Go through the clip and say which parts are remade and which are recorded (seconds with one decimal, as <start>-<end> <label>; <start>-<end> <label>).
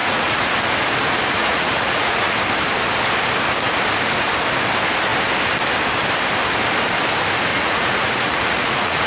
0.0-0.5 remade; 0.5-1.4 recorded; 1.4-2.3 remade; 2.3-7.5 recorded; 7.5-9.1 remade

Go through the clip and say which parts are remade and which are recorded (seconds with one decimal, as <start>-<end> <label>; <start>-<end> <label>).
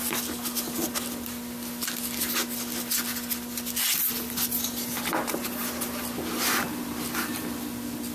0.0-8.1 recorded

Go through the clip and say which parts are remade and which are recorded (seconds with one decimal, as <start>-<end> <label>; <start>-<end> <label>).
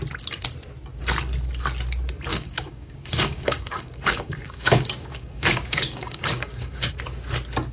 0.0-2.3 recorded; 2.3-6.9 remade; 6.9-7.7 recorded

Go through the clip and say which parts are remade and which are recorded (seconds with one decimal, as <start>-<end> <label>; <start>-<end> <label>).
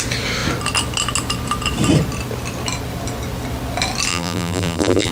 0.0-4.1 recorded; 4.1-5.1 remade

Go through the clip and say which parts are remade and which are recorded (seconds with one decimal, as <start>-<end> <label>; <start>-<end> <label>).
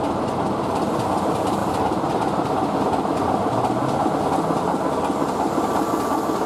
0.0-1.6 recorded; 1.6-4.1 remade; 4.1-6.5 recorded